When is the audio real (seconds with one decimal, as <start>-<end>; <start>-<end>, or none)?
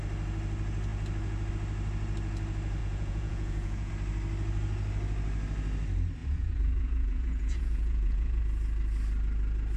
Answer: 0.0-2.8; 3.9-6.2; 8.4-9.8